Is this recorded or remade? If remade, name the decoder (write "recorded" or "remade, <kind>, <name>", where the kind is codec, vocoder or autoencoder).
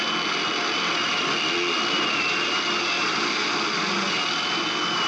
recorded